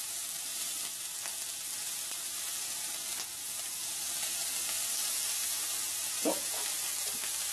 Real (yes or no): yes